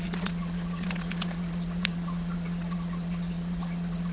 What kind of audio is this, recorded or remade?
remade